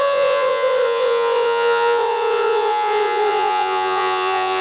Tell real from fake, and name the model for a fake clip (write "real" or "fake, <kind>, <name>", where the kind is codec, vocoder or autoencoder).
fake, vocoder, Vocos